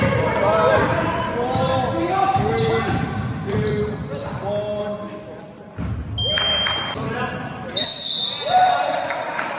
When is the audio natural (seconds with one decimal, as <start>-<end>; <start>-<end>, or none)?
3.8-7.2; 7.9-8.5